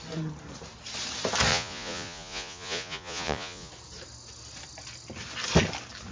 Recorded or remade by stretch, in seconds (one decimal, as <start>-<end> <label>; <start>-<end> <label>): 0.0-1.5 recorded; 1.5-3.7 remade; 3.7-6.1 recorded